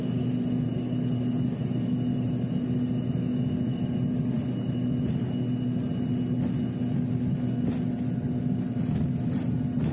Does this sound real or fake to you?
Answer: real